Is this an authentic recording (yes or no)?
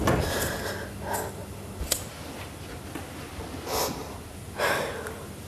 yes